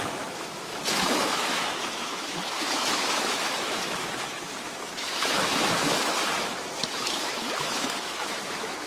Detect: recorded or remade remade